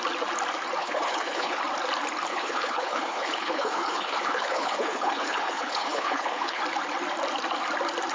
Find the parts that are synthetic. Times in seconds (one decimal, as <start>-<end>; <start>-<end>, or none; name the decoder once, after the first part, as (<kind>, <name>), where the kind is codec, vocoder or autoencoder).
0.8-1.6 (codec, HILCodec); 2.3-6.6